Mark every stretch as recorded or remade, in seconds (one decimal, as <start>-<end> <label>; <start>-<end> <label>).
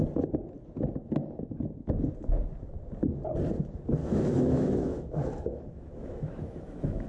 0.0-4.0 recorded; 4.0-7.1 remade